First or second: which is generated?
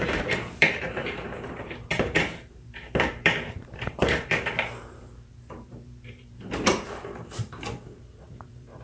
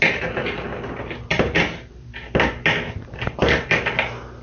first